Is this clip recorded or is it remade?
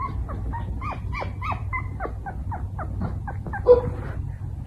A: recorded